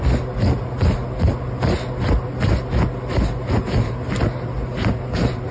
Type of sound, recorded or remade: recorded